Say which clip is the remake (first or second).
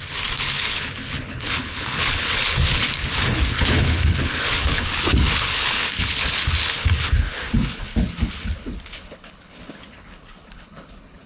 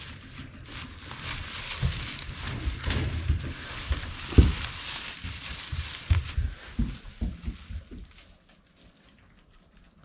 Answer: first